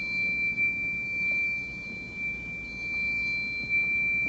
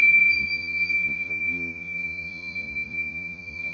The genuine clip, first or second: first